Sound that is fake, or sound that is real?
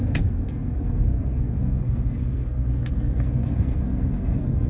fake